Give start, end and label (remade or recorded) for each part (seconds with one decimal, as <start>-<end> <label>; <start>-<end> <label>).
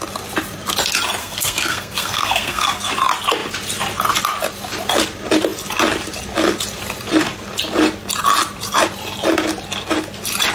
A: 0.0-1.2 recorded; 1.2-2.9 remade; 2.9-10.5 recorded